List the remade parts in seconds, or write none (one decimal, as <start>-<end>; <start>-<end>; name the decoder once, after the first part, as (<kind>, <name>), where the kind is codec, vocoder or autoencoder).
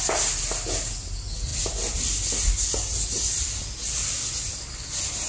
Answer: none